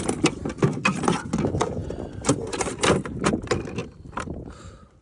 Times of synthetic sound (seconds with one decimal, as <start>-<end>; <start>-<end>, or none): 3.8-5.0